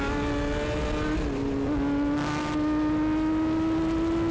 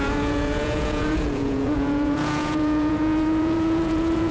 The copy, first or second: second